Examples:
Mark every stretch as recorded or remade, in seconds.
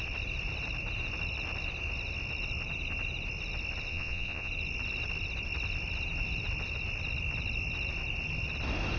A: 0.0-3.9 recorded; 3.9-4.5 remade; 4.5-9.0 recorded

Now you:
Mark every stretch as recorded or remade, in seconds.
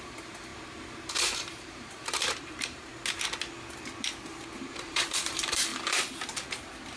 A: 0.0-0.5 remade; 0.5-1.1 recorded; 1.1-2.9 remade; 2.9-4.3 recorded; 4.3-5.7 remade; 5.7-7.0 recorded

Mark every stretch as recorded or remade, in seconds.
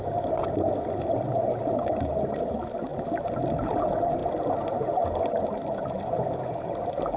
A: 0.0-7.2 recorded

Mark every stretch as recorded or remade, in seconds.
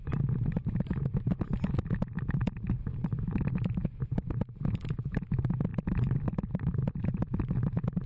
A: 0.0-2.4 recorded; 2.4-5.2 remade; 5.2-5.7 recorded; 5.7-7.2 remade; 7.2-8.1 recorded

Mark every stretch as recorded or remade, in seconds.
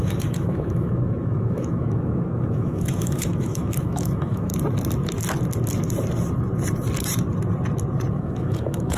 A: 0.0-4.5 remade; 4.5-8.1 recorded; 8.1-9.0 remade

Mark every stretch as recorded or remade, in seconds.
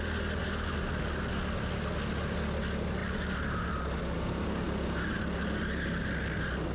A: 0.0-6.7 recorded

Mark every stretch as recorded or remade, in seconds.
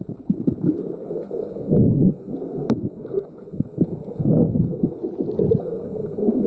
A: 0.0-5.0 remade; 5.0-5.6 recorded; 5.6-6.5 remade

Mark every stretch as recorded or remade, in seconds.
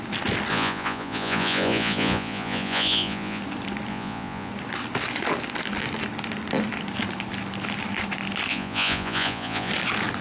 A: 0.0-0.5 recorded; 0.5-3.4 remade; 3.4-3.9 recorded; 3.9-4.5 remade; 4.5-8.5 recorded; 8.5-9.7 remade; 9.7-10.2 recorded